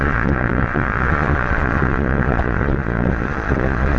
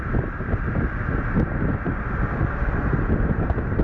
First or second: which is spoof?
first